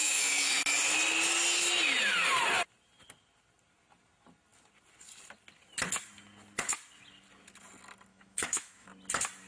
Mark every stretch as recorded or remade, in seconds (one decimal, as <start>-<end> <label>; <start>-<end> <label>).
0.0-0.6 remade; 0.6-8.1 recorded; 8.1-8.9 remade; 8.9-9.5 recorded